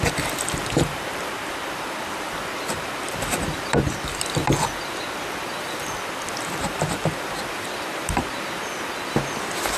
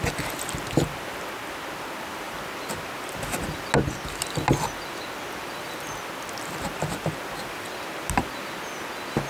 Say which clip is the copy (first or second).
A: first